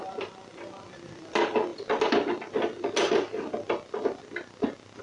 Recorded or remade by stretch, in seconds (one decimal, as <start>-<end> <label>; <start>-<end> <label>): 0.0-1.7 remade; 1.7-5.0 recorded